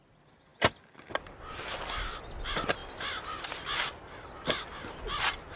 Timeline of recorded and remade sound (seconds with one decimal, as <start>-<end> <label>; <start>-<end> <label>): 0.0-5.6 recorded